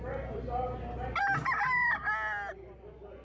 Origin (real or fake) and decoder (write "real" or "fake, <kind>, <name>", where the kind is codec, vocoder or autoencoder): real